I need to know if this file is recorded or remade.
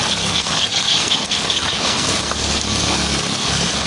remade